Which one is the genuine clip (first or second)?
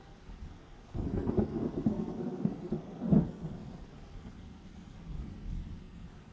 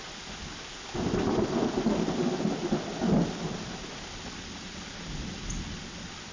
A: second